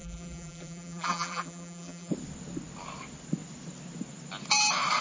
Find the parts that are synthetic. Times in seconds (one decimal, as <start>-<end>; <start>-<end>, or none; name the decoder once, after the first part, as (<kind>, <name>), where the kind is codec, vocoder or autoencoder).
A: 0.0-2.1 (vocoder, BigVGAN v2)